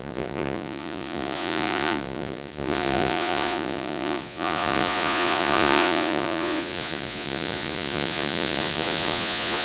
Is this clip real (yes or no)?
no